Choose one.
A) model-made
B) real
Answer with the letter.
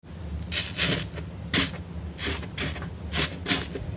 B